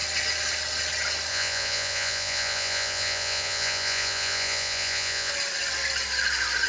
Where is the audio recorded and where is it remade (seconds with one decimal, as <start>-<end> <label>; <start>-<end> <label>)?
0.0-1.3 recorded; 1.3-5.3 remade; 5.3-6.7 recorded